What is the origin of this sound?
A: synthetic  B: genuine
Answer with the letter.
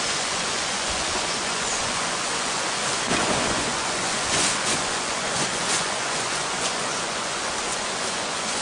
A